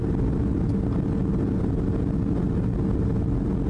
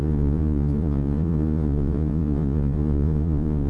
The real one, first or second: first